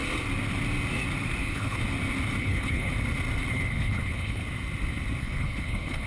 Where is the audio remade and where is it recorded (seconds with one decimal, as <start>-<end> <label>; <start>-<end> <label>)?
0.0-1.4 recorded; 1.4-1.8 remade; 1.8-2.4 recorded; 2.4-2.9 remade; 2.9-3.5 recorded; 3.5-4.4 remade; 4.4-5.2 recorded; 5.2-6.1 remade